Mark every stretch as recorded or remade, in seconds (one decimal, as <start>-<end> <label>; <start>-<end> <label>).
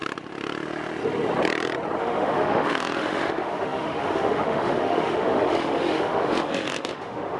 0.0-2.0 recorded; 2.0-7.4 remade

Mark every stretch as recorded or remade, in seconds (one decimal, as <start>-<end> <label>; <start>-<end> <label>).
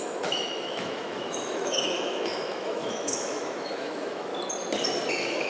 0.0-4.3 remade; 4.3-5.1 recorded; 5.1-5.5 remade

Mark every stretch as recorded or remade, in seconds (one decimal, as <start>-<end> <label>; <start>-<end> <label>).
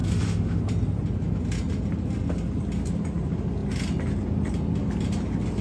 0.0-0.6 remade; 0.6-5.6 recorded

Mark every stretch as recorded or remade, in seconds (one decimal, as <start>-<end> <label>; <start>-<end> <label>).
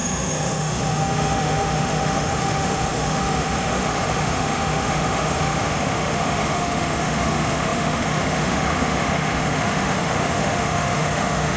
0.0-11.6 remade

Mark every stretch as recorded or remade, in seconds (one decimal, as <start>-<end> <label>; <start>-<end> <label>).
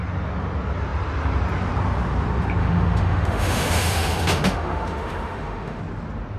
0.0-2.6 recorded; 2.6-5.8 remade; 5.8-6.4 recorded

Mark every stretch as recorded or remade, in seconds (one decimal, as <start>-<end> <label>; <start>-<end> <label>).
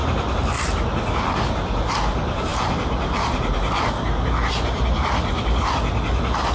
0.0-6.5 recorded